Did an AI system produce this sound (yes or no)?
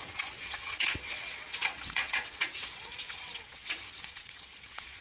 yes